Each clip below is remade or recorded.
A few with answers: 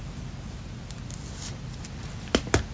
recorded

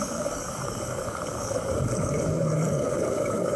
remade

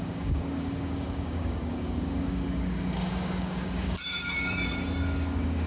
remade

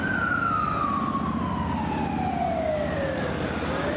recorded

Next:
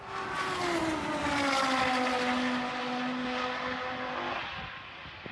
recorded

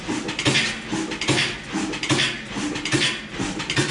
recorded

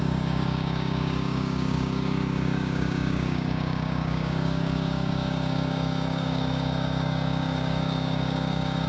remade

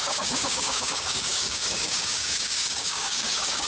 remade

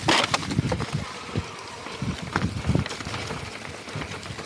recorded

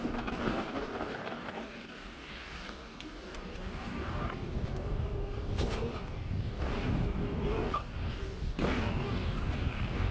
remade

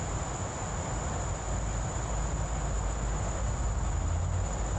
recorded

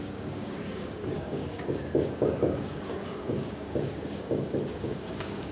remade